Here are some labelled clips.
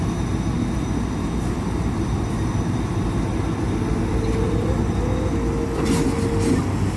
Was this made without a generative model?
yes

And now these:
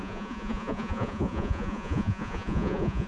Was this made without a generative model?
no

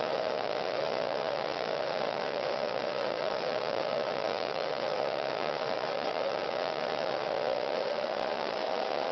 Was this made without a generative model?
no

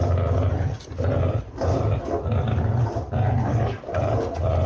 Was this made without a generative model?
yes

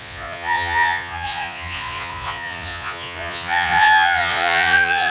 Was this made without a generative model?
no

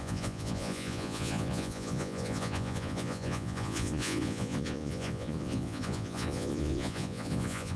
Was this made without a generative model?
no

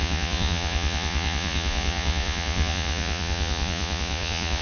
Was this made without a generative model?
no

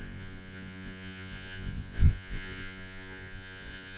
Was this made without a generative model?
no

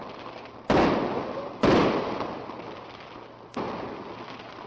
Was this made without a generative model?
yes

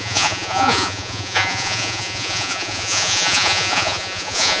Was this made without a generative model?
no